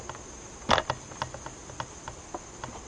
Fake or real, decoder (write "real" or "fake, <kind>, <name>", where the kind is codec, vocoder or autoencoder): real